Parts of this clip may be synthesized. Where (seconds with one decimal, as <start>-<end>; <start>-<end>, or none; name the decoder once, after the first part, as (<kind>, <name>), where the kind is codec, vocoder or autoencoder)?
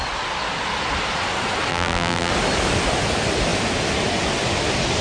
1.7-2.3 (vocoder, BigVGAN v2)